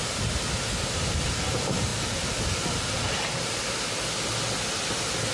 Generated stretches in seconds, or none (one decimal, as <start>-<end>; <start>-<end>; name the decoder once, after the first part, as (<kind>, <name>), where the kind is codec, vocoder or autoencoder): none